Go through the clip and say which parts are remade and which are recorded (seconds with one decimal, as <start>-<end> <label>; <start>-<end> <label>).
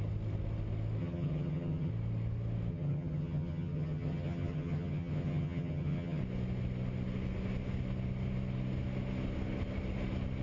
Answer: 0.0-1.0 recorded; 1.0-1.9 remade; 1.9-2.7 recorded; 2.7-6.2 remade; 6.2-10.4 recorded